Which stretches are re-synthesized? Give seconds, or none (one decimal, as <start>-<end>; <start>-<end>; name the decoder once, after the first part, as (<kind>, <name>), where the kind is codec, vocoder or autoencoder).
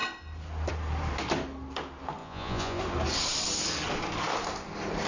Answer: 2.2-2.8 (vocoder, Vocos)